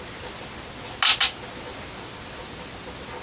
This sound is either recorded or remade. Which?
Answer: recorded